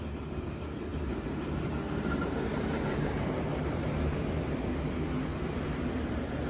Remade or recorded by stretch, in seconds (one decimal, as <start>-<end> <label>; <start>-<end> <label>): 0.0-0.9 recorded; 0.9-4.7 remade; 4.7-5.3 recorded; 5.3-5.9 remade; 5.9-6.5 recorded